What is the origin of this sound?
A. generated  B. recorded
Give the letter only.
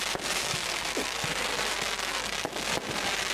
B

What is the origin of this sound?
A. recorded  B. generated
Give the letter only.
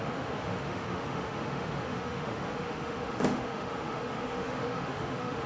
B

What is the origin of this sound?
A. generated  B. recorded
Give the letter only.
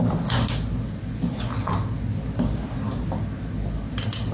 B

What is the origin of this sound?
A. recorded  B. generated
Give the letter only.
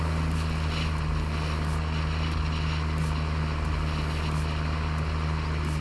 A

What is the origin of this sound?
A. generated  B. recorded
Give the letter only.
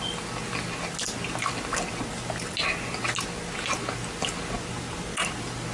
B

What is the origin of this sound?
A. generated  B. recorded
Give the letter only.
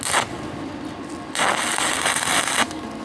B